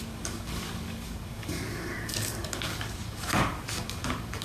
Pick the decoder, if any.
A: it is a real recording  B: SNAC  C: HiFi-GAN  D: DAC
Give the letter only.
D